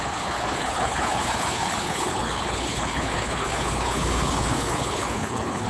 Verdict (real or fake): fake